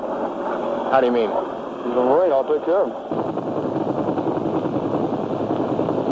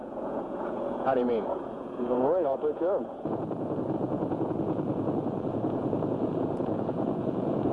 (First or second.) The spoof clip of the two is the second